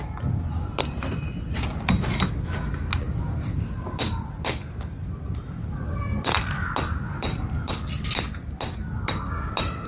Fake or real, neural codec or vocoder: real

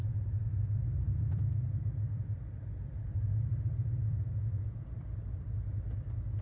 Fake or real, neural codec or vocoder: fake, vocoder, BigVGAN v2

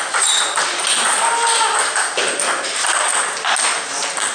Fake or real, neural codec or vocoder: real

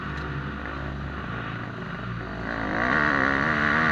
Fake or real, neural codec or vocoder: real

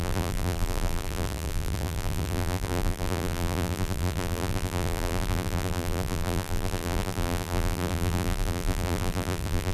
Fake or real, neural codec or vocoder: fake, vocoder, BigVGAN v2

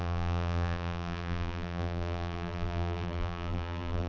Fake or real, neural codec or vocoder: fake, vocoder, BigVGAN v2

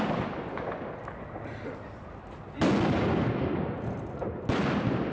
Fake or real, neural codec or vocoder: real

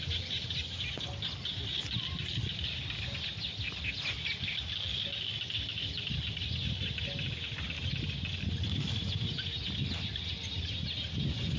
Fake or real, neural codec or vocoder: real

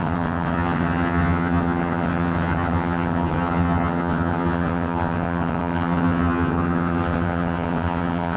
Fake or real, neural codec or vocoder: fake, vocoder, HiFi-GAN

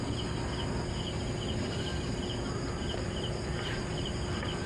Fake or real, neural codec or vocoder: real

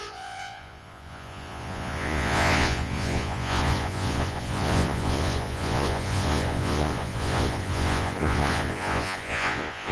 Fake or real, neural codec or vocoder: fake, vocoder, Vocos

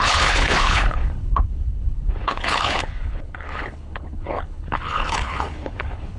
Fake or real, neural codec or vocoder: fake, codec, HILCodec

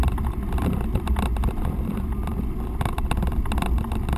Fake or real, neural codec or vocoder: real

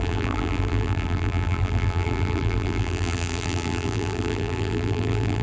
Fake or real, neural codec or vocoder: fake, vocoder, BigVGAN v2